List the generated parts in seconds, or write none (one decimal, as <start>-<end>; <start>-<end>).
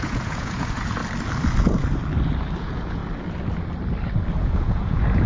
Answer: 0.0-1.0; 2.6-3.0; 4.4-5.3